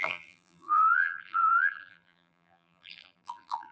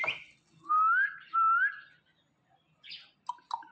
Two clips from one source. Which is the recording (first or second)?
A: second